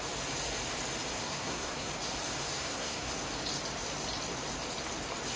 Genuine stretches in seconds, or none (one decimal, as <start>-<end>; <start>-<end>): 0.0-1.1; 1.9-2.5; 3.1-5.4